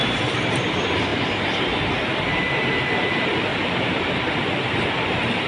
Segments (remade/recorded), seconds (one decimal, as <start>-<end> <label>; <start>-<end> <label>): 0.0-0.7 remade; 0.7-3.5 recorded; 3.5-4.0 remade; 4.0-5.5 recorded